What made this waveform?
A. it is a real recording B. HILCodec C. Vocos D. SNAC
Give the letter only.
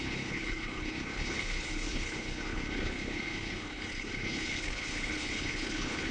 B